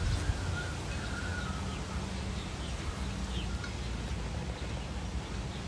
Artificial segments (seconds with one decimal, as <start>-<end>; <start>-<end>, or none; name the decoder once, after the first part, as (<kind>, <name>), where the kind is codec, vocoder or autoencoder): none